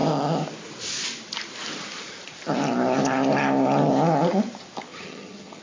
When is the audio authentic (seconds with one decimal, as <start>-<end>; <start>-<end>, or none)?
0.0-4.9